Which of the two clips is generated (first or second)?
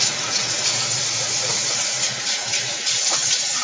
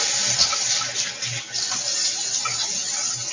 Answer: first